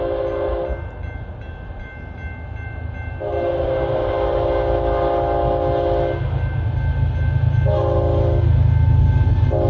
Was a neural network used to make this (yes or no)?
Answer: no